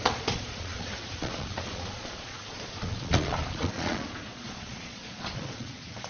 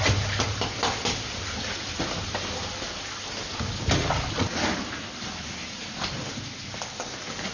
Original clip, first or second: second